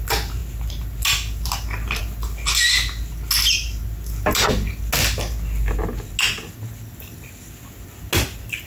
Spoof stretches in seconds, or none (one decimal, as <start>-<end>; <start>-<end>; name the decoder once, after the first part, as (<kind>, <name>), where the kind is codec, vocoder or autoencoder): none